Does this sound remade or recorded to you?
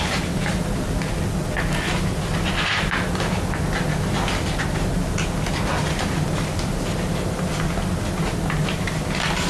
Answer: recorded